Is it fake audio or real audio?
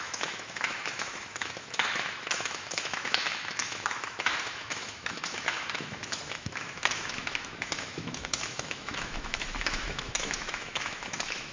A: fake